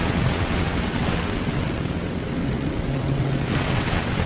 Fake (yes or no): yes